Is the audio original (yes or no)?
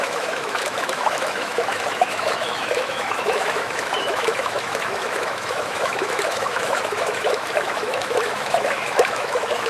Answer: no